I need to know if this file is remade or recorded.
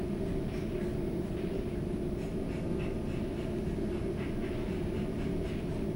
recorded